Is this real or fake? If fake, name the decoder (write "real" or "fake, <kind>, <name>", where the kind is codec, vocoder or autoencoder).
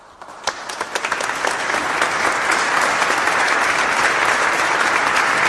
real